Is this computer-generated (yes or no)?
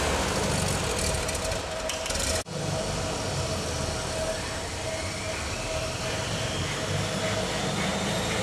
no